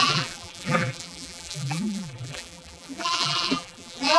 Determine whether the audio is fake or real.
fake